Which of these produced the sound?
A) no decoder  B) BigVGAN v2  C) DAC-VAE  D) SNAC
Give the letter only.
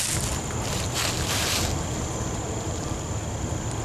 A